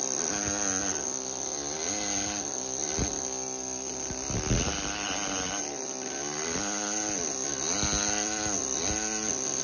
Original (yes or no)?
yes